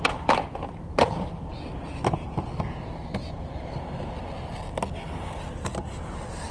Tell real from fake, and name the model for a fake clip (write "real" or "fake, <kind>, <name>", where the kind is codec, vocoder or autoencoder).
real